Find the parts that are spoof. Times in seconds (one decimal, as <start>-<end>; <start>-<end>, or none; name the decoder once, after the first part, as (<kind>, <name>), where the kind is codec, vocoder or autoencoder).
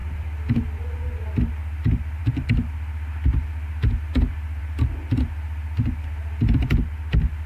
0.0-1.4 (vocoder, BigVGAN v2)